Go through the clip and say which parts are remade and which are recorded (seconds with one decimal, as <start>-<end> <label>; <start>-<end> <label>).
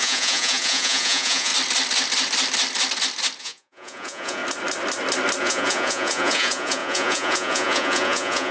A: 0.0-1.5 remade; 1.5-3.4 recorded; 3.4-4.4 remade; 4.4-5.4 recorded; 5.4-8.5 remade